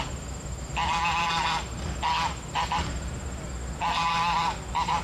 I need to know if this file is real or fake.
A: real